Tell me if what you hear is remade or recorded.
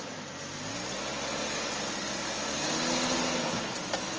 recorded